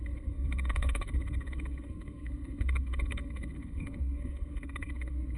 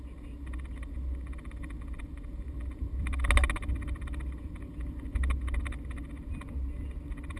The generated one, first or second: first